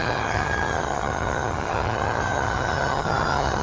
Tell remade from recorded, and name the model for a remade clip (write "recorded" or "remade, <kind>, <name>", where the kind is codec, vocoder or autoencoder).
remade, vocoder, HiFi-GAN